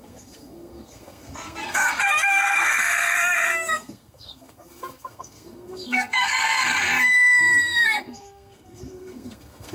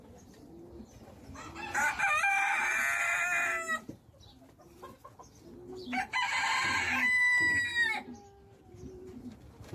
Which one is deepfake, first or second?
first